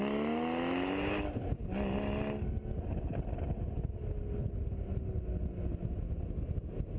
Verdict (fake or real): real